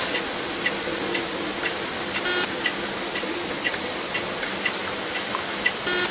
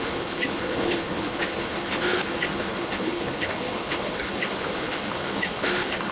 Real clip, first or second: first